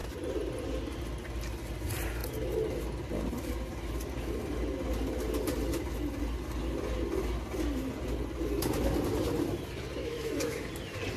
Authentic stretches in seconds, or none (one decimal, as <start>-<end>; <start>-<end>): 0.0-10.0; 10.7-11.2